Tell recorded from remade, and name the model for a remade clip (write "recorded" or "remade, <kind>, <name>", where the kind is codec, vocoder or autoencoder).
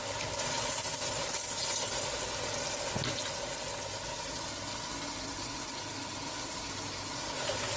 recorded